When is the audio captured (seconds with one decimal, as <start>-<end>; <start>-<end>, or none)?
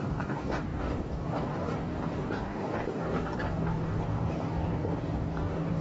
none